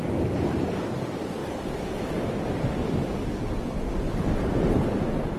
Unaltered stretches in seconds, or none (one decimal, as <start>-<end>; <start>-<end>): 0.7-1.4; 4.6-5.4